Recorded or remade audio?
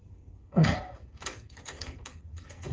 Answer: remade